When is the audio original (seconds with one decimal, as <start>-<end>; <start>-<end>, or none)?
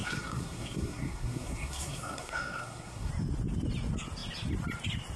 3.1-5.2